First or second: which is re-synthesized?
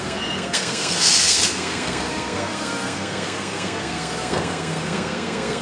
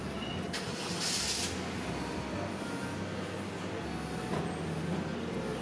first